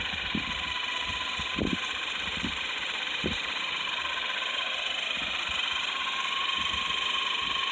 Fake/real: fake